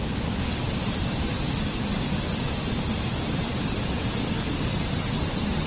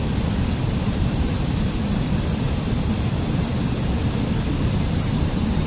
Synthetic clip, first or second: second